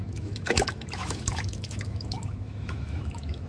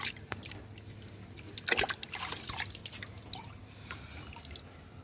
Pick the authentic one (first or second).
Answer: second